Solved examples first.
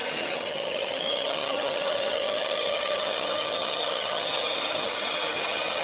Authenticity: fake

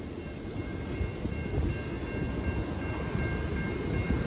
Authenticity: real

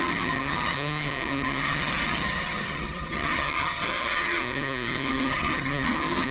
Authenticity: fake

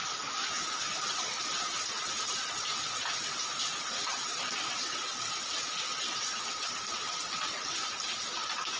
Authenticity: real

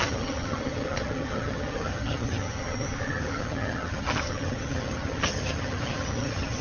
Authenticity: fake